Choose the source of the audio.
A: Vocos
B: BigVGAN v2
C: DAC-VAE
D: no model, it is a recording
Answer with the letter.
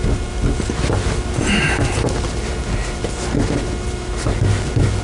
D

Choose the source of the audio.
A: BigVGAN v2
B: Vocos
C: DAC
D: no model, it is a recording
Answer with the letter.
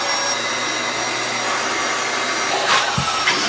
D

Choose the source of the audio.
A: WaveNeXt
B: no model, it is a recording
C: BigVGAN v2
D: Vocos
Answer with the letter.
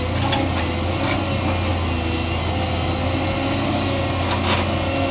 B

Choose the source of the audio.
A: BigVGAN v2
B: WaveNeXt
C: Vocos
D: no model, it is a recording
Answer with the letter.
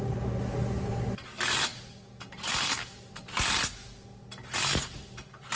D